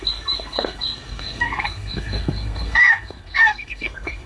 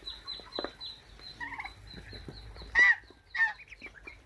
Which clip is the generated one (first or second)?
first